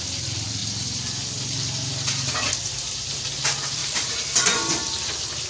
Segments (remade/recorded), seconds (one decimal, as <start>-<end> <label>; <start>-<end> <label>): 0.0-2.7 recorded; 2.7-3.3 remade; 3.3-3.8 recorded; 3.8-5.1 remade; 5.1-5.5 recorded